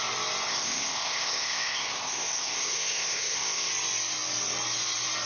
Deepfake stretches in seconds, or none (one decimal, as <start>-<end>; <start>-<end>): 0.5-3.7